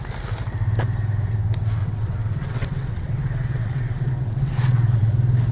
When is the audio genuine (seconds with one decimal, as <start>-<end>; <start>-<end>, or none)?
0.0-1.8; 5.1-5.5